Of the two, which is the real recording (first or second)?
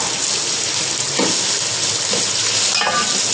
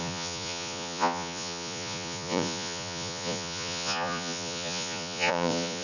first